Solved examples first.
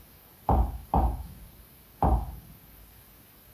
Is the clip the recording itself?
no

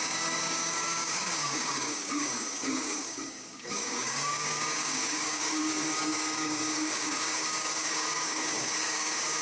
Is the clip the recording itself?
no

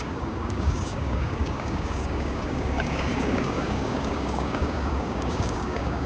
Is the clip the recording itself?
no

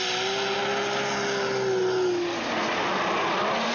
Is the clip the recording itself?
yes